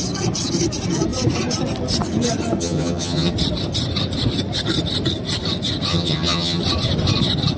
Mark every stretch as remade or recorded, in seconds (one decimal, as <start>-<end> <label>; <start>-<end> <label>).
0.0-2.6 recorded; 2.6-3.3 remade; 3.3-5.9 recorded; 5.9-6.6 remade; 6.6-7.6 recorded